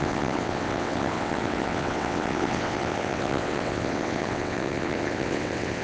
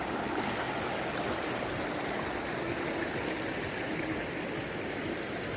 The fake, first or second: first